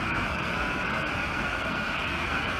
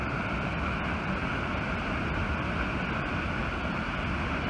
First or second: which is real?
second